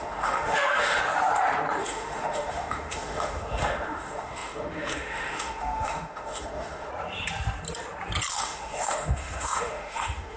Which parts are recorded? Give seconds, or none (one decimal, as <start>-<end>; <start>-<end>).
1.0-1.8; 6.9-8.3